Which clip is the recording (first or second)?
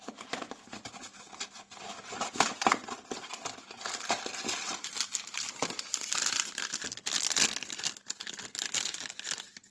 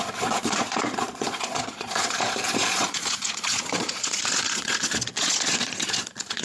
first